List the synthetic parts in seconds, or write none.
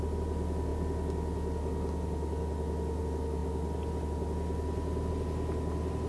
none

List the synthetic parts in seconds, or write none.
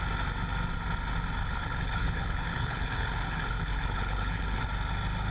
1.4-4.6